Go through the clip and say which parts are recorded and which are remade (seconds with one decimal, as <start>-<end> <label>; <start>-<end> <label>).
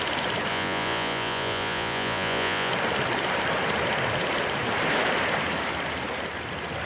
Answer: 0.0-0.5 recorded; 0.5-2.7 remade; 2.7-6.9 recorded